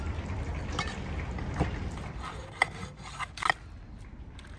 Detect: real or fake real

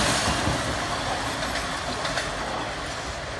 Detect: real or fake real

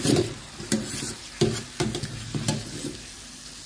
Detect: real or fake real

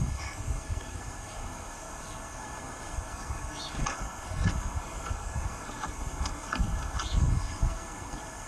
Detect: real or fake fake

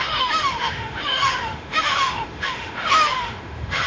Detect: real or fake fake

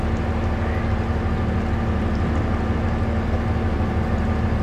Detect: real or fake real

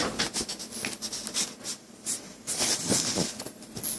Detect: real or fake real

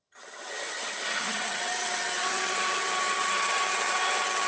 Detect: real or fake fake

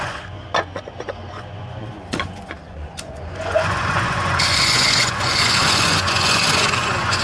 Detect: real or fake fake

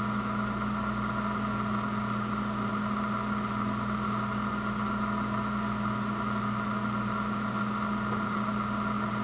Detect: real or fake real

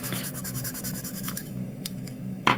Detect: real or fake fake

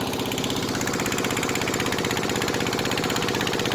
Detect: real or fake real